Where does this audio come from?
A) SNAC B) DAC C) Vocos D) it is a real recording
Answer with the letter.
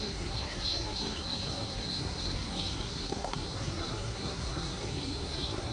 A